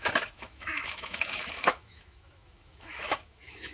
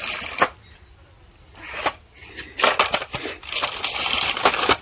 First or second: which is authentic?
second